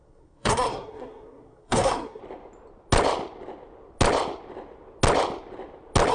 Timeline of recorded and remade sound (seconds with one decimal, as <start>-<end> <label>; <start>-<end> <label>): 0.0-2.2 remade; 2.2-6.1 recorded